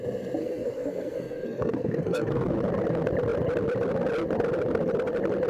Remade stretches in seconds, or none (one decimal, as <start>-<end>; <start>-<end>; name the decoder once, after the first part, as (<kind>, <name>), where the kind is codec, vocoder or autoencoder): 0.4-2.5 (codec, SNAC)